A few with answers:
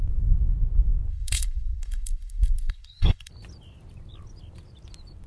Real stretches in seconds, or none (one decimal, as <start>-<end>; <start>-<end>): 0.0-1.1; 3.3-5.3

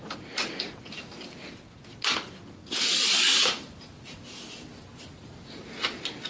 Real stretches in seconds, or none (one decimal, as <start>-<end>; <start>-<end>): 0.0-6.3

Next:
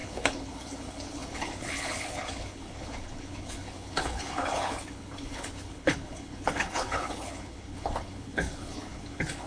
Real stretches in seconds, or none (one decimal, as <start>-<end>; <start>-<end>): none

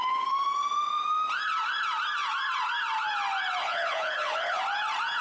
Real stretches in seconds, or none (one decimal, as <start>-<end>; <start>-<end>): 0.0-3.6; 4.6-5.2

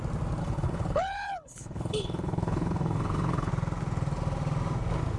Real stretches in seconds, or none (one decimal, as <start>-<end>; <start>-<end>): 0.0-0.4; 3.5-5.2